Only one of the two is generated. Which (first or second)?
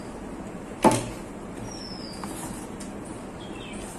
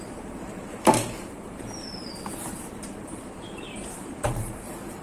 second